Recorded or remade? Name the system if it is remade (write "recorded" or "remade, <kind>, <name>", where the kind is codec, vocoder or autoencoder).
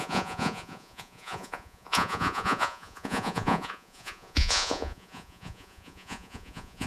remade, vocoder, Vocos